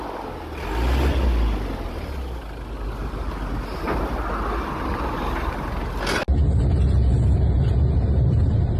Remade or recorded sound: recorded